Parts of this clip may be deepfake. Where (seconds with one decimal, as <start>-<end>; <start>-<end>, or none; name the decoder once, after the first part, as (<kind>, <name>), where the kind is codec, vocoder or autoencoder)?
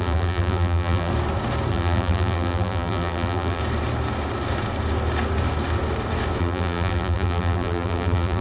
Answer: 0.0-1.1 (vocoder, BigVGAN v2); 1.7-3.6; 6.4-8.4